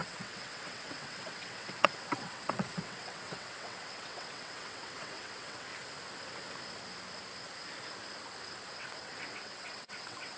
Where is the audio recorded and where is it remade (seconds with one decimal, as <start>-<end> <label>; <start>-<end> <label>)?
0.0-5.7 remade; 5.7-8.7 recorded; 8.7-10.4 remade